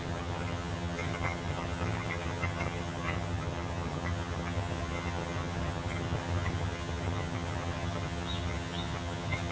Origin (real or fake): fake